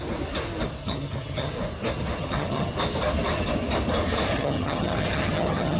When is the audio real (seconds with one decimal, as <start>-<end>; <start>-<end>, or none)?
0.0-0.8; 1.5-2.2; 2.7-4.3